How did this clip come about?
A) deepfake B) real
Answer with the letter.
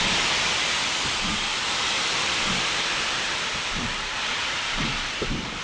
A